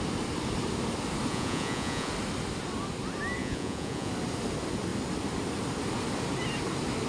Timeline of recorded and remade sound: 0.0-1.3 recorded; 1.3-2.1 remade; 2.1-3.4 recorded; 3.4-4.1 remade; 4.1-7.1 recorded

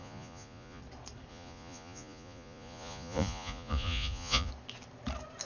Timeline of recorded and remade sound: 0.0-0.8 remade; 0.8-1.3 recorded; 1.3-4.5 remade; 4.5-5.5 recorded

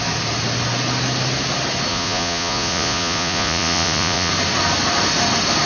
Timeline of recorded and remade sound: 0.0-1.9 recorded; 1.9-4.3 remade; 4.3-5.7 recorded

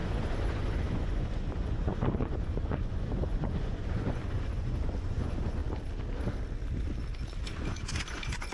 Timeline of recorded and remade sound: 0.0-5.6 remade; 5.6-7.5 recorded; 7.5-8.5 remade

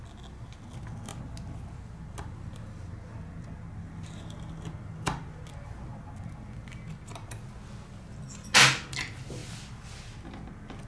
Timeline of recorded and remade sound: 0.0-10.9 recorded